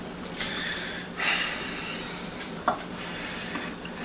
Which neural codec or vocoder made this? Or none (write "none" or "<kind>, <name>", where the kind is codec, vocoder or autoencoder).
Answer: vocoder, BigVGAN v2